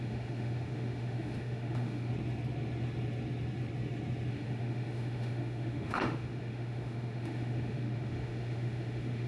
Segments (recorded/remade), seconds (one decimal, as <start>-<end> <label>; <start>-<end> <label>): 0.0-2.1 remade; 2.1-4.3 recorded; 4.3-9.3 remade